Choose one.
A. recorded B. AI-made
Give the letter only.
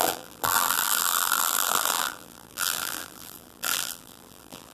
B